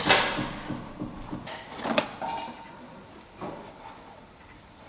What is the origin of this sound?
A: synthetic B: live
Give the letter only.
B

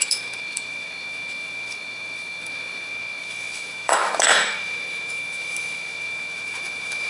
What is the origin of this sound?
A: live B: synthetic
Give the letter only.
B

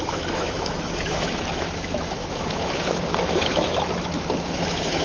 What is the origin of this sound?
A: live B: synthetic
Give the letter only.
B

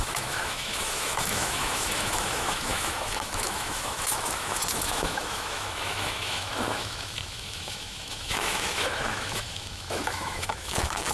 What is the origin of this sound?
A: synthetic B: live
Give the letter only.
A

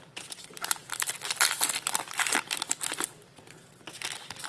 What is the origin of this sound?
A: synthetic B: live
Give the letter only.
B